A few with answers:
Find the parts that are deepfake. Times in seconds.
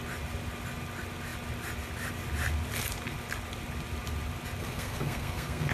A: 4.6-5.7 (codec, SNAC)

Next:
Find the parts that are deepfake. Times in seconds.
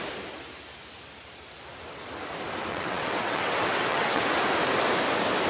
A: 2.7-4.2 (vocoder, WaveNeXt)